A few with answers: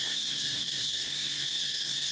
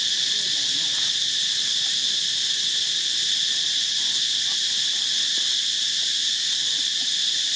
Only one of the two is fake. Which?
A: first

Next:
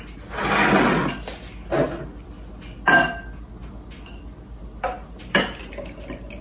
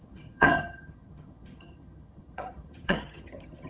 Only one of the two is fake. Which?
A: second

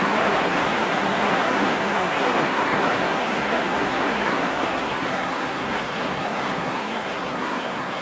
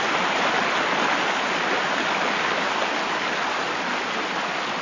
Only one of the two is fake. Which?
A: first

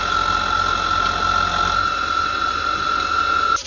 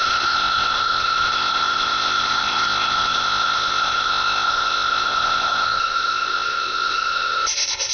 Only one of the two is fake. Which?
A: second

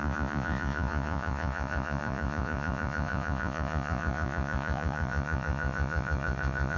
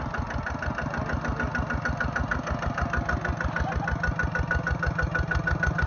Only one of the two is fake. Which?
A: first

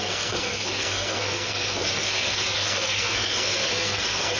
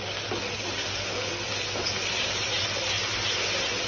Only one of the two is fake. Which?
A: first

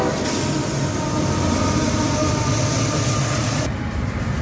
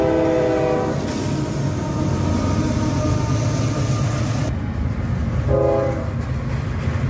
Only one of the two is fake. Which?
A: first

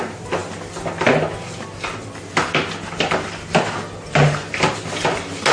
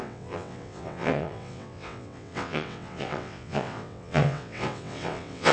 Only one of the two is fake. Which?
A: second